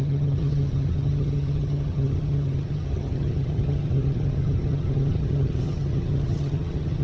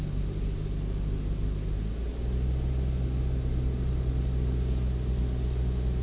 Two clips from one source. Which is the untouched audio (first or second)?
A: second